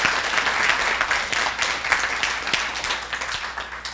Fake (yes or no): no